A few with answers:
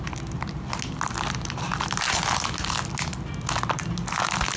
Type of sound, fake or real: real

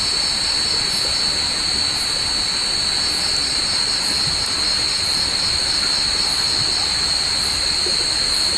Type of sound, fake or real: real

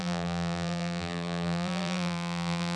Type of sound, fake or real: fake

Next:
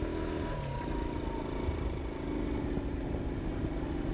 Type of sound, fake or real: real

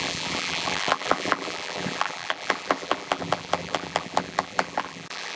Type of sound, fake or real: fake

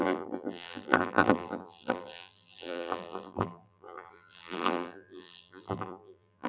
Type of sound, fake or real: fake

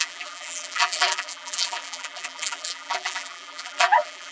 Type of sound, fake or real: fake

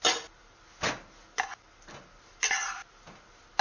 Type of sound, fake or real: real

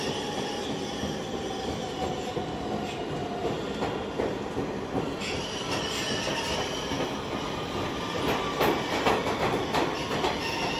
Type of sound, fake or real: real